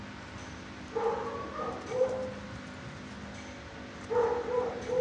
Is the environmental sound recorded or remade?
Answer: recorded